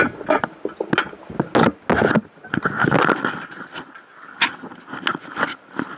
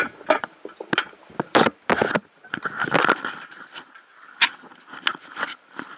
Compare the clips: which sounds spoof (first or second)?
second